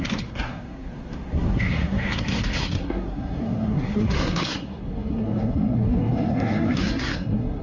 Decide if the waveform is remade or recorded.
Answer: remade